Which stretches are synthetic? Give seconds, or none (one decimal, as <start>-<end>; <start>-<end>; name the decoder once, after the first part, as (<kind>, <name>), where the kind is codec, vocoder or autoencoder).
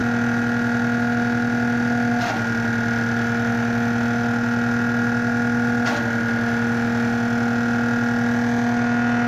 none